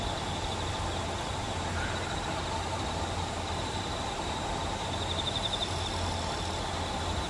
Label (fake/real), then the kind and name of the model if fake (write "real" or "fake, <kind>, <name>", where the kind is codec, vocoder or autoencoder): real